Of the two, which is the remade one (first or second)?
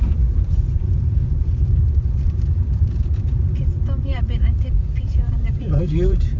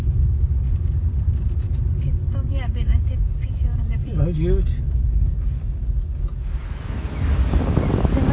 first